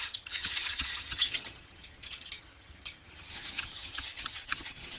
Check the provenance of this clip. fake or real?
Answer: fake